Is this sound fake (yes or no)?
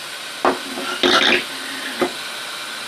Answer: no